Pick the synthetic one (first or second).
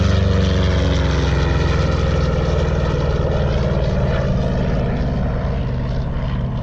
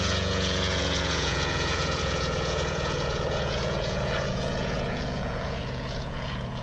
second